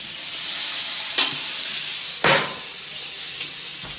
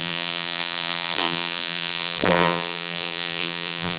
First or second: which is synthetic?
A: second